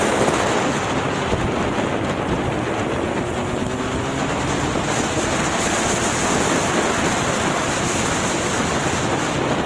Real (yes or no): yes